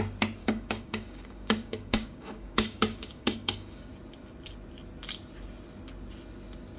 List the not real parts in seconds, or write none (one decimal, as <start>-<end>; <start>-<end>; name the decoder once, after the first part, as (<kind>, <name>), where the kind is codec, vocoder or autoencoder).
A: 0.4-3.9 (codec, DAC)